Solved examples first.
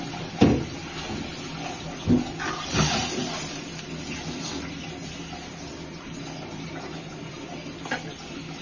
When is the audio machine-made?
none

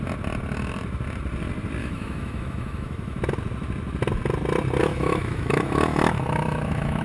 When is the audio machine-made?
1.8-3.2; 4.8-7.0

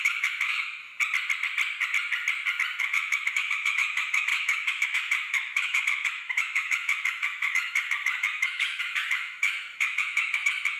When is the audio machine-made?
0.0-0.9; 2.8-10.8

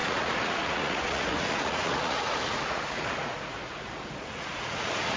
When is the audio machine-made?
0.0-5.2

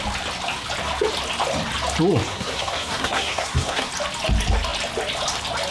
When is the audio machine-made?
2.3-3.9

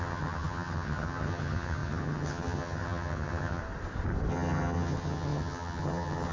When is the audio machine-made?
0.0-3.6; 4.3-6.3

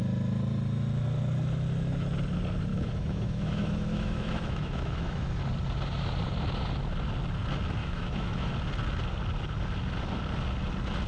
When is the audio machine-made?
2.7-5.3; 7.8-8.5

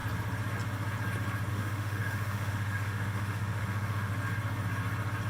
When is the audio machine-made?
1.5-4.1